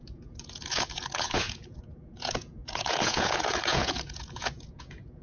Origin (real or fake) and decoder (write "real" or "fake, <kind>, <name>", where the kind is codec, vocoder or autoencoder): fake, vocoder, Vocos